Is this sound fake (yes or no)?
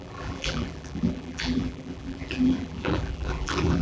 yes